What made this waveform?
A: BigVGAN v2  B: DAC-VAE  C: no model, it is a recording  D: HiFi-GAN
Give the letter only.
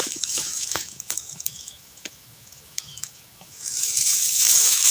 B